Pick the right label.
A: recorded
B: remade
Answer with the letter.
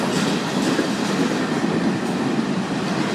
A